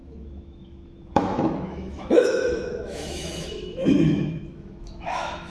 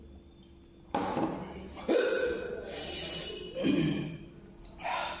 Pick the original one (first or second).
second